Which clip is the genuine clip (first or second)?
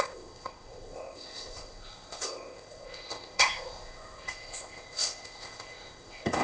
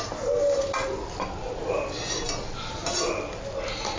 second